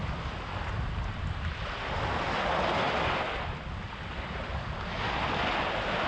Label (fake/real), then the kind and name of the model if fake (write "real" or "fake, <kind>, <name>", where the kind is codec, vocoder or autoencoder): real